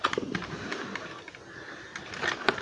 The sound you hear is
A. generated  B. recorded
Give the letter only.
B